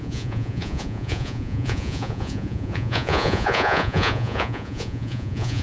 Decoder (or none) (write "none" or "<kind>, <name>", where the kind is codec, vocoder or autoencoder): vocoder, Vocos